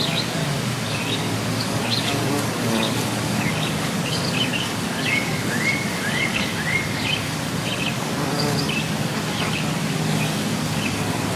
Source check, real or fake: fake